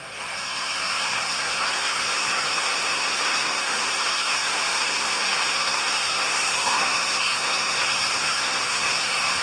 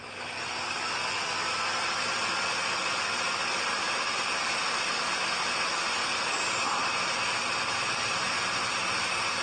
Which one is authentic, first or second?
second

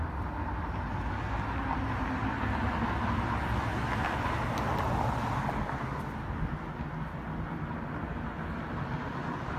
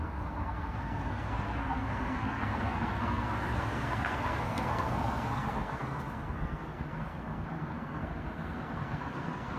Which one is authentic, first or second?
first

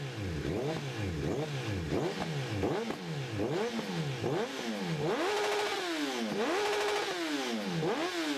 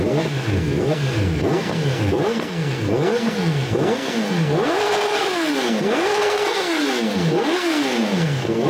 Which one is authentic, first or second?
first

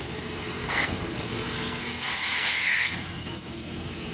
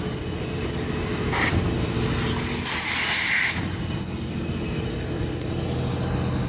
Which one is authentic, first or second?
second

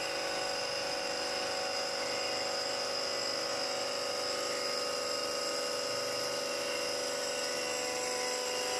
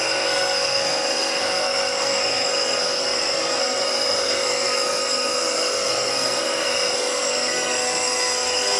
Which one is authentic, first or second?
first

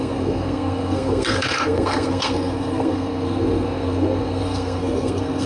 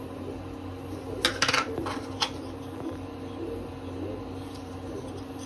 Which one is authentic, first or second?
second